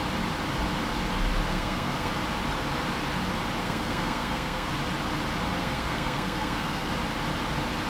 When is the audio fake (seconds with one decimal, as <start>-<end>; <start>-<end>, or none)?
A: 1.5-2.1; 3.6-4.7; 5.6-6.9